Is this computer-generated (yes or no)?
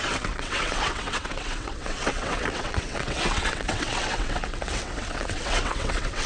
yes